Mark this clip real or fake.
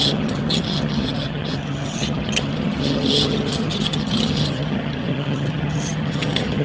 fake